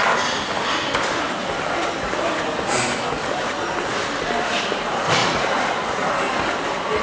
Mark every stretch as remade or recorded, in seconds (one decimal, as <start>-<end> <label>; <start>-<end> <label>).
0.0-3.2 recorded; 3.2-3.7 remade; 3.7-5.2 recorded; 5.2-6.1 remade; 6.1-7.0 recorded